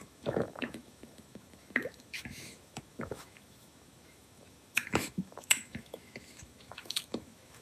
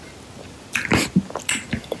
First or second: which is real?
second